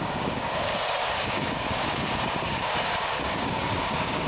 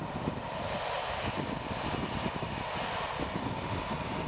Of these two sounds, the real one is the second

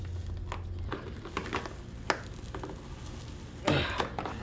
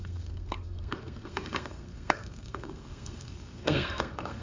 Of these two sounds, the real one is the first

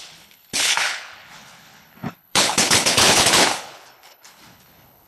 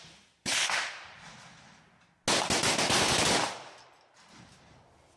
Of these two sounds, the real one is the second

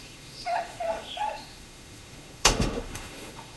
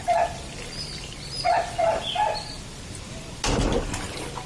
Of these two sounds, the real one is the second